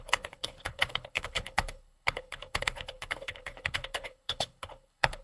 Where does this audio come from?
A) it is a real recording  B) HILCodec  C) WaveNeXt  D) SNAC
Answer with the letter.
B